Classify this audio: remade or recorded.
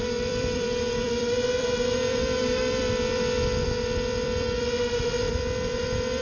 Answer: remade